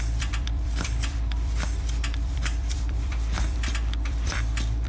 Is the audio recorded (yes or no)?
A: no